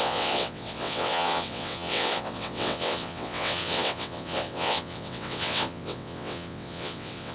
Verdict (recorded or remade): remade